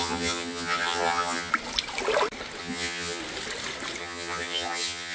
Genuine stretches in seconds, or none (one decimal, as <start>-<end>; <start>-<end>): 1.5-2.6; 3.2-4.0